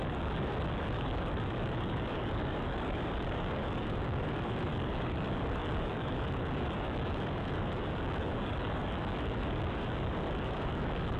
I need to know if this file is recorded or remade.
remade